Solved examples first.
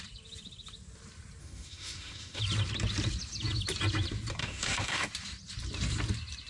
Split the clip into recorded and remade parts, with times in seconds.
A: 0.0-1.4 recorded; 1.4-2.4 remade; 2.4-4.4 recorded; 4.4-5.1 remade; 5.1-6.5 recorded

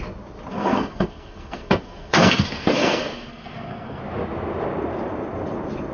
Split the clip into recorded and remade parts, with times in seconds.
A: 0.0-0.5 recorded; 0.5-4.0 remade; 4.0-5.9 recorded

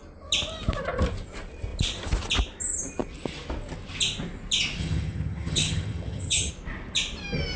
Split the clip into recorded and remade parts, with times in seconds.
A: 0.0-4.8 recorded; 4.8-6.5 remade; 6.5-7.6 recorded

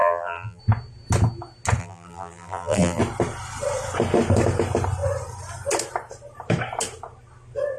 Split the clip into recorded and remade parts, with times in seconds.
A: 0.0-0.6 remade; 0.6-1.8 recorded; 1.8-3.0 remade; 3.0-7.8 recorded

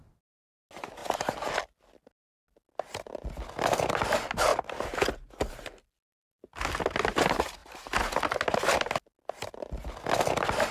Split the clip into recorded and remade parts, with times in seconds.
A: 0.0-10.7 recorded

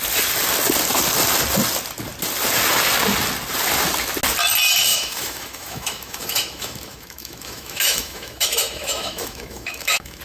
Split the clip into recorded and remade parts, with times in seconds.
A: 0.0-4.9 recorded; 4.9-10.2 remade